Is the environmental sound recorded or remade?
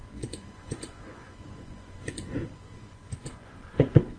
remade